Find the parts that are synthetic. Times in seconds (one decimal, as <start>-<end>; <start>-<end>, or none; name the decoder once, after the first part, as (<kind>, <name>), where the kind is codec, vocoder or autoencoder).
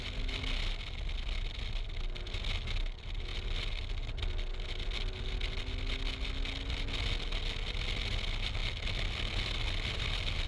none